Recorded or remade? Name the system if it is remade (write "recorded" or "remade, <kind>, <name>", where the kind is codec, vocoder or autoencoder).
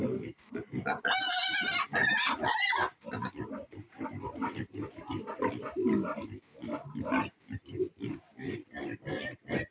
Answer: recorded